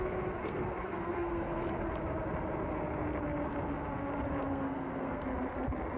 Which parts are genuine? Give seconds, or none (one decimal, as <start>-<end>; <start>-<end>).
0.0-0.4; 1.7-4.5; 5.2-6.0